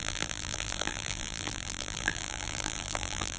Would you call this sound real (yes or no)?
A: no